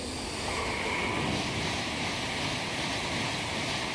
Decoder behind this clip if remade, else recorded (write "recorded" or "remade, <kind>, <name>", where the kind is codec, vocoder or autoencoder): recorded